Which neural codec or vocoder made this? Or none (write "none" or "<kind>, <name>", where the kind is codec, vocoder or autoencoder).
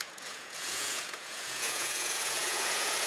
vocoder, Vocos